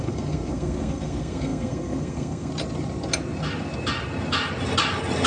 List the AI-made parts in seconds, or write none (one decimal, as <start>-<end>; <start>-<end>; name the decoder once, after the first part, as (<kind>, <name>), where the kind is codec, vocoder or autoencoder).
0.0-2.5 (codec, SNAC)